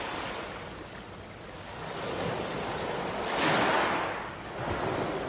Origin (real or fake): real